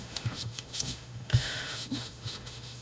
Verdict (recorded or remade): remade